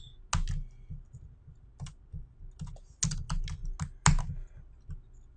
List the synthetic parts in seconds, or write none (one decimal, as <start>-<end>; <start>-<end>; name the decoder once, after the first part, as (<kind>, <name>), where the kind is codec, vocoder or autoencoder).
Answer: none